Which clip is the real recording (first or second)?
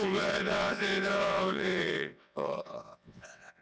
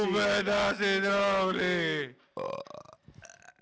second